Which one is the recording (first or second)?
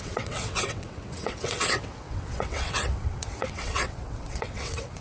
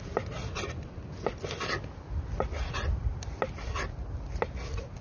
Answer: second